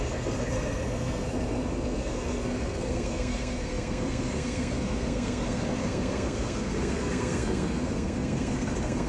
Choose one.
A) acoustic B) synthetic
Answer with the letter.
B